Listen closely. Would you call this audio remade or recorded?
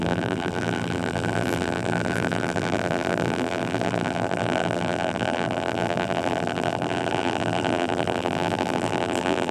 remade